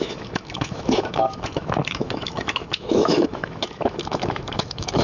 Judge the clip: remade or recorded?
remade